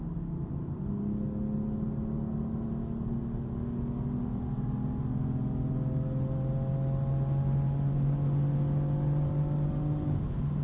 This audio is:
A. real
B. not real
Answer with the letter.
A